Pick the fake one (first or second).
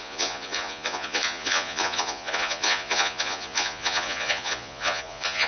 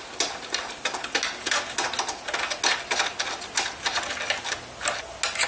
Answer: first